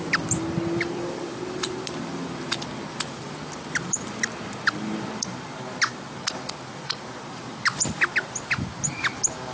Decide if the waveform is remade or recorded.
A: remade